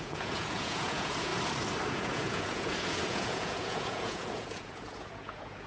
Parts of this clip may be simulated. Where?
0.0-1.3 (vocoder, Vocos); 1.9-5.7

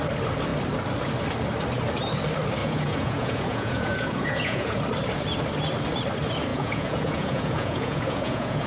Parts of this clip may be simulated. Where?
2.6-4.8 (vocoder, Vocos); 6.5-8.7

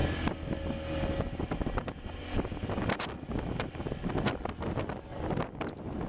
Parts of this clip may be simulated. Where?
none

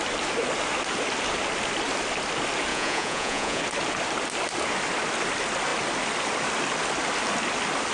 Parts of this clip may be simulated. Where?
2.7-3.6 (vocoder, Vocos)

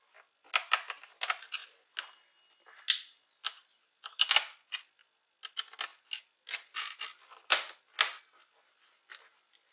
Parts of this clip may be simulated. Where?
none

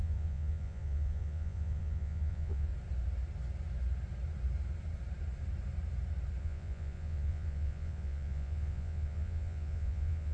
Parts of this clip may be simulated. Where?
0.0-2.7 (vocoder, Vocos); 6.4-10.3